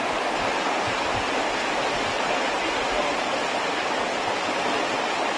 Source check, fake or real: real